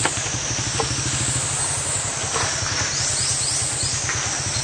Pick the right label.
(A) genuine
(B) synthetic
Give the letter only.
A